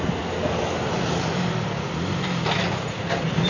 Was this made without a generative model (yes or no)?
yes